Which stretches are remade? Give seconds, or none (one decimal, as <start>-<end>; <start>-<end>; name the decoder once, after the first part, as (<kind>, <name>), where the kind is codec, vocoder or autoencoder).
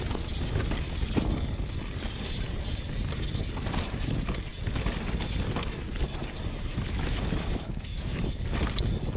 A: 6.7-8.2 (autoencoder, DAC-VAE)